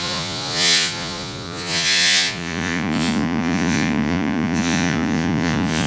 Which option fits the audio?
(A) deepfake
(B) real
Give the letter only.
A